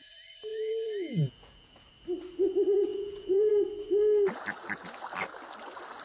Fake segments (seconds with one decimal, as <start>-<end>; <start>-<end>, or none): 0.5-1.9; 2.9-3.5

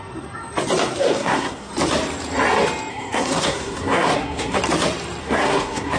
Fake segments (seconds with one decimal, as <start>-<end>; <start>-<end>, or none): 1.0-1.7; 2.9-4.6; 5.2-6.0

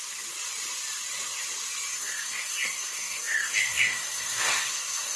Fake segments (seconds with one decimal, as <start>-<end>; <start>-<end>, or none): 1.9-5.2